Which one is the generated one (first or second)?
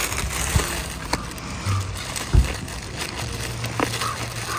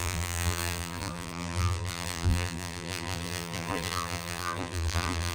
second